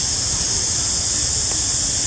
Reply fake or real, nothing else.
real